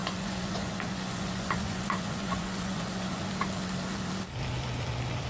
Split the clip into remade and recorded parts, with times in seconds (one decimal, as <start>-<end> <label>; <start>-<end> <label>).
0.0-3.2 remade; 3.2-5.3 recorded